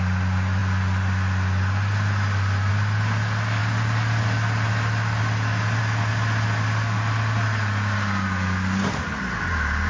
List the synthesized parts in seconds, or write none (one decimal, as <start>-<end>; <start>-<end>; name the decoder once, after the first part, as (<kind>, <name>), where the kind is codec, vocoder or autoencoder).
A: none